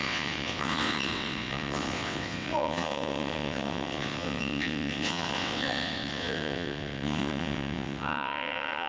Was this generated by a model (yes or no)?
yes